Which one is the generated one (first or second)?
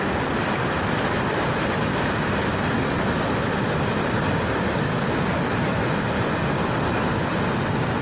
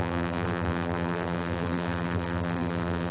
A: second